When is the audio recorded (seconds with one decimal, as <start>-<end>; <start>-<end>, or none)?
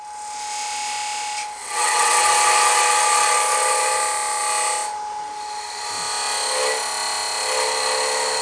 0.0-1.6; 2.2-8.4